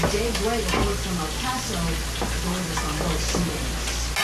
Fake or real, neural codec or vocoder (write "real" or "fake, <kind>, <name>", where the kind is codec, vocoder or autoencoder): real